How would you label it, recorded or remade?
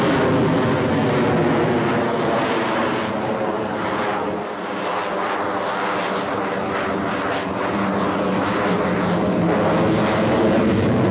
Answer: recorded